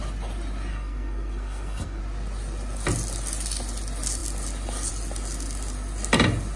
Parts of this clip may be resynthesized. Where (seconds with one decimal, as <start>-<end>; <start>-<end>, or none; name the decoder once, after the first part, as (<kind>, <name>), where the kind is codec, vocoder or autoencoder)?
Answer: 0.7-2.0 (codec, SNAC)